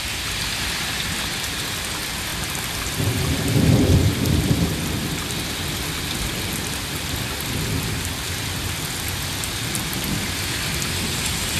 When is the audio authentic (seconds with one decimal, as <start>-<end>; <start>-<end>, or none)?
0.0-2.3; 4.9-11.6